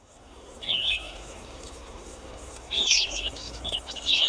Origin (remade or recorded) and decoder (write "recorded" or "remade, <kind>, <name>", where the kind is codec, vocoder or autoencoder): remade, codec, SNAC